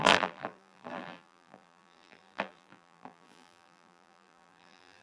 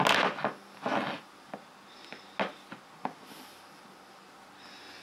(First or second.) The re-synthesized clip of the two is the first